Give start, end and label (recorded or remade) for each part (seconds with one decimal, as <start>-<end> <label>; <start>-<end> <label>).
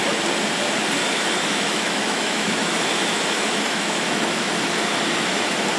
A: 0.0-1.0 recorded; 1.0-4.5 remade; 4.5-5.8 recorded